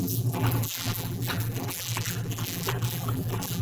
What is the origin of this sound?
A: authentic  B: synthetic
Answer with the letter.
B